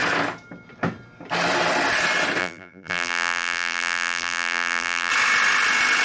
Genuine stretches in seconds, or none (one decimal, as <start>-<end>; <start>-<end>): 0.0-2.4; 5.1-6.0